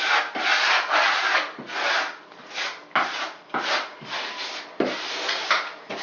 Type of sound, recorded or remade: recorded